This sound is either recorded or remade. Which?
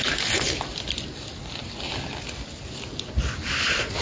recorded